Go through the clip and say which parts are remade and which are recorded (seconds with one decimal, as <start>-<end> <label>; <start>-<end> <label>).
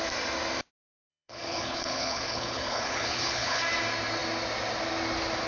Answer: 0.0-1.1 recorded; 1.1-3.6 remade; 3.6-5.5 recorded